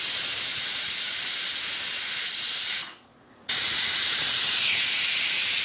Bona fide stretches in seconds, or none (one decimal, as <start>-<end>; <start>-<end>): 0.0-0.5; 1.1-2.8